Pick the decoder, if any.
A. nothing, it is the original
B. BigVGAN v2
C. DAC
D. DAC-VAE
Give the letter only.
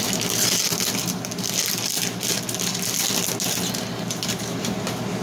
A